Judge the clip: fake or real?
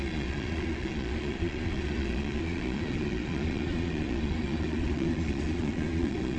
fake